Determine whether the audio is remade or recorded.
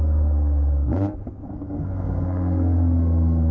remade